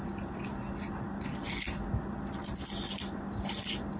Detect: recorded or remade recorded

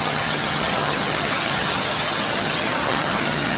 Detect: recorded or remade remade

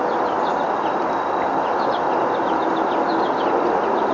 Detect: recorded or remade recorded